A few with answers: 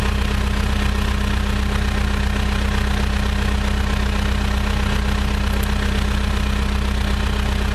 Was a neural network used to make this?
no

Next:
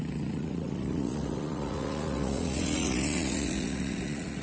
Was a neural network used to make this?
yes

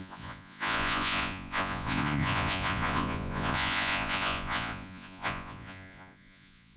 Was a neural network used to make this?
yes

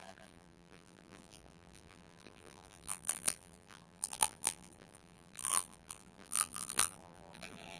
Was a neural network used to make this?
yes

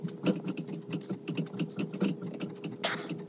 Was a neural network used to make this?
no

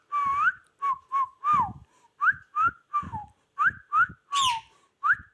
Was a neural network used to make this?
no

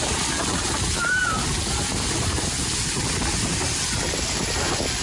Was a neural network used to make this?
no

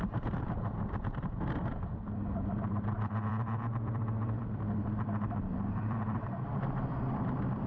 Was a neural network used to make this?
yes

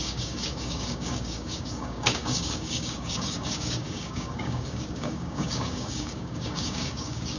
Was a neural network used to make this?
yes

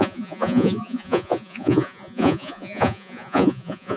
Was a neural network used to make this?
yes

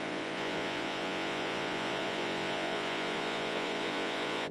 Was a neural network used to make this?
yes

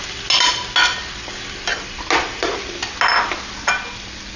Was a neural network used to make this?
no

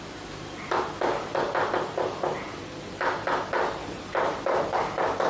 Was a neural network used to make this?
no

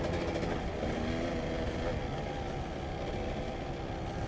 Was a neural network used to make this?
no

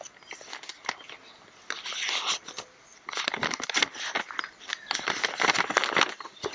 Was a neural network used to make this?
no